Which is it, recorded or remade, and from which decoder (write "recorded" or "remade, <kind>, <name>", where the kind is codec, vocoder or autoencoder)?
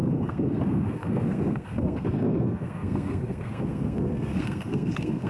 remade, codec, SNAC